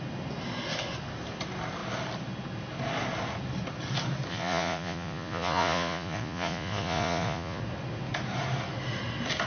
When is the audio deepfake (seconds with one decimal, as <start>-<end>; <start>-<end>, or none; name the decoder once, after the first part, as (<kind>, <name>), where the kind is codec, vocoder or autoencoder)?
4.3-7.6 (vocoder, Vocos)